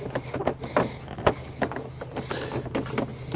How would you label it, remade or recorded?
recorded